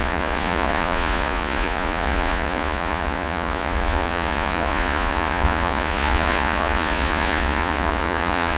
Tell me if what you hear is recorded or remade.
remade